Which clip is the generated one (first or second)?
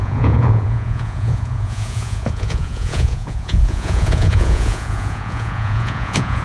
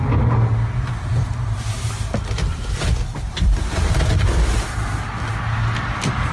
first